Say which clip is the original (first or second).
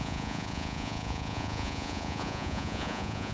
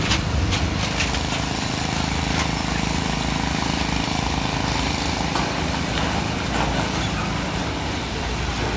second